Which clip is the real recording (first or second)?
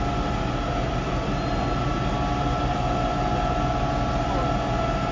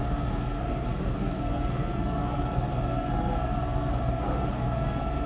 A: first